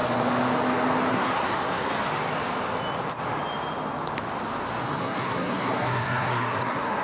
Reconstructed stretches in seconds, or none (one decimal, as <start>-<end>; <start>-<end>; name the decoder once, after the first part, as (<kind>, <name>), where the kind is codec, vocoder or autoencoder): 1.1-1.9 (codec, SNAC); 4.9-7.0